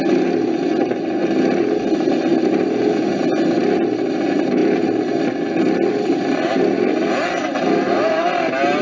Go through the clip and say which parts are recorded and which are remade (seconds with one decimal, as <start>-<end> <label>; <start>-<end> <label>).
0.0-8.8 recorded